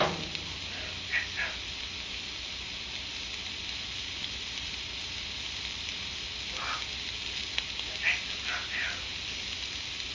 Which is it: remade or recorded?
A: recorded